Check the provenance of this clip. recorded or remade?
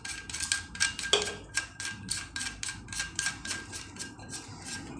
recorded